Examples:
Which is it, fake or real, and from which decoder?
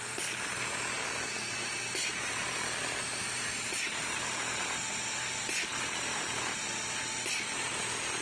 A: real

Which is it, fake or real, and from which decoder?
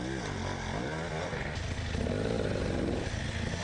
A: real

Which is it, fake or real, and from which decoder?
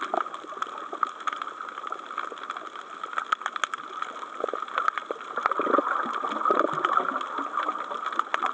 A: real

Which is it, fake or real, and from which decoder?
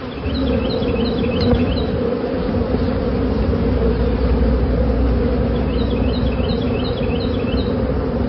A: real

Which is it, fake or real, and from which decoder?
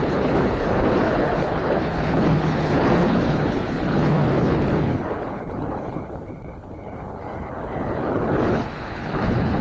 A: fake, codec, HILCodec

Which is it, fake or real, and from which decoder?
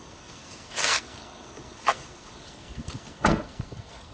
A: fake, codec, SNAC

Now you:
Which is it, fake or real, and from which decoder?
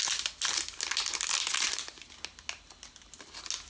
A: real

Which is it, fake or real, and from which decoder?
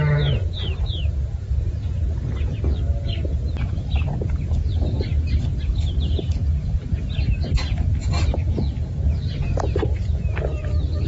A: real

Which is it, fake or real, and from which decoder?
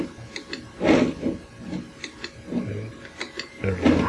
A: real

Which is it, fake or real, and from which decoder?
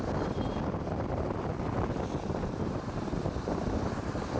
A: fake, vocoder, BigVGAN v2